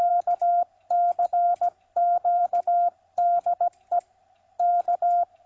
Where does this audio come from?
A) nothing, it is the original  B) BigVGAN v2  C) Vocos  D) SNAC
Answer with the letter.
B